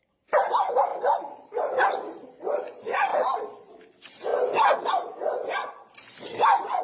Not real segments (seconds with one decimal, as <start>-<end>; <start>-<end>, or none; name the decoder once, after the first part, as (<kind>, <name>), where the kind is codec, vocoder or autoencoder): none